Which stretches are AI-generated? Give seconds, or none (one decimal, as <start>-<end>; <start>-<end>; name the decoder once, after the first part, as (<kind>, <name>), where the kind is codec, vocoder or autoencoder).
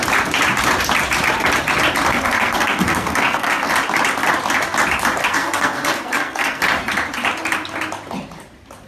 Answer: 2.1-3.7 (codec, SNAC); 5.2-6.6